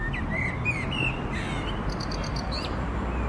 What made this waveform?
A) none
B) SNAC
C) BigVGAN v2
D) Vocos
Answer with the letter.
C